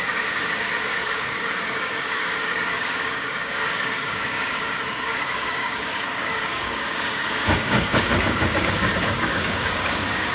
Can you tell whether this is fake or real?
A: fake